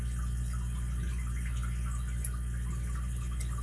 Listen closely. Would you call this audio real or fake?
real